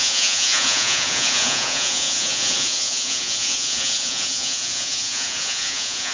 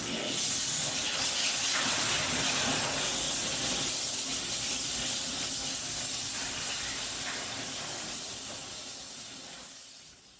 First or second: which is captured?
second